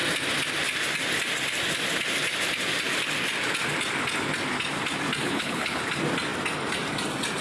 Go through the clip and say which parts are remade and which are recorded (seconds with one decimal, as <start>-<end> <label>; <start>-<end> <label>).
0.0-5.2 recorded; 5.2-5.8 remade; 5.8-7.4 recorded

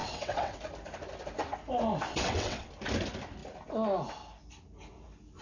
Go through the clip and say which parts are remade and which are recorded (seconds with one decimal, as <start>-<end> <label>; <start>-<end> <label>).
0.0-0.6 remade; 0.6-2.1 recorded; 2.1-2.7 remade; 2.7-5.4 recorded

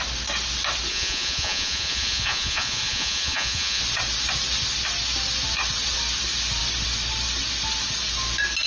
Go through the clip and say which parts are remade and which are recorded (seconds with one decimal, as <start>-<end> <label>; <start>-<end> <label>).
0.0-0.9 recorded; 0.9-3.8 remade; 3.8-8.7 recorded

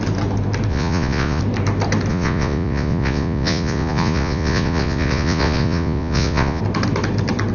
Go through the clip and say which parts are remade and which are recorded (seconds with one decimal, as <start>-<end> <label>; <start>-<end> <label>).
0.0-0.7 recorded; 0.7-1.4 remade; 1.4-2.1 recorded; 2.1-6.6 remade; 6.6-7.5 recorded

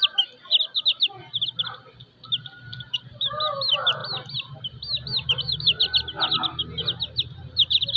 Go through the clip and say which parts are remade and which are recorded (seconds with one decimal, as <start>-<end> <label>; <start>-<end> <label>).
0.0-2.7 recorded; 2.7-3.4 remade; 3.4-8.0 recorded

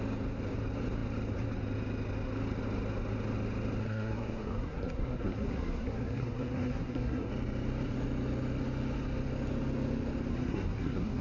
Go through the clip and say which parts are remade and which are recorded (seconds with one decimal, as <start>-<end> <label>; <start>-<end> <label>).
0.0-3.8 recorded; 3.8-7.3 remade; 7.3-10.3 recorded; 10.3-11.2 remade